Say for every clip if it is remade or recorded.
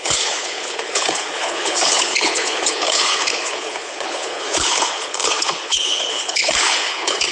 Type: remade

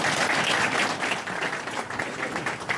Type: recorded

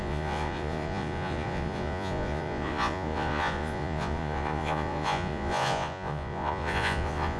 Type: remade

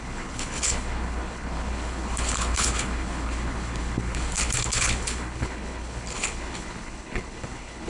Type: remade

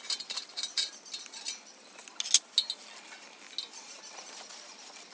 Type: recorded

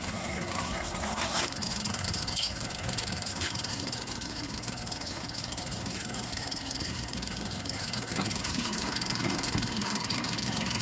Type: remade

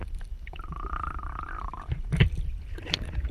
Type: remade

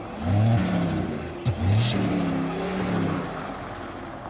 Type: recorded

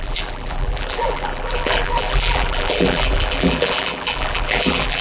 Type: remade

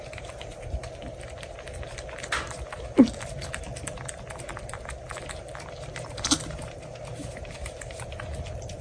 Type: remade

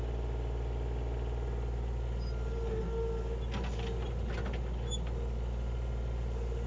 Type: recorded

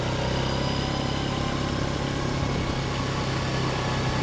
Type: recorded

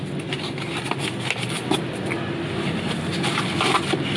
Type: recorded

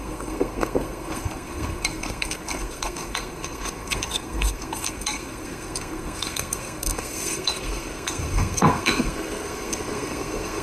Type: remade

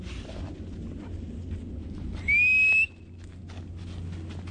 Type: recorded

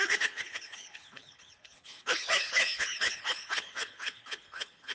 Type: remade